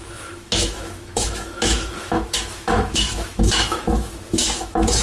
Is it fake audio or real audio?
fake